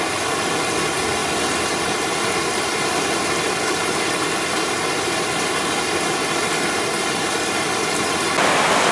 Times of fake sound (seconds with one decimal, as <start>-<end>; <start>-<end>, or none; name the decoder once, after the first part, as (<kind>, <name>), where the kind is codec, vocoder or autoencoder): none